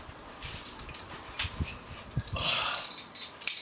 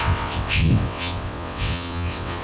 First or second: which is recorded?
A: first